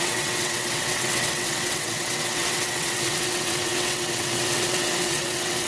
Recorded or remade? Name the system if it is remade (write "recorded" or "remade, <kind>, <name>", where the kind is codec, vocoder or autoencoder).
remade, vocoder, WaveNeXt